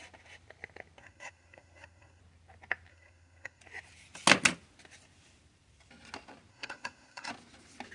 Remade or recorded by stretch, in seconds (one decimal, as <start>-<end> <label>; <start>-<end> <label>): 0.0-1.0 recorded; 1.0-2.2 remade; 2.2-2.9 recorded; 2.9-3.6 remade; 3.6-6.5 recorded; 6.5-7.3 remade; 7.3-7.9 recorded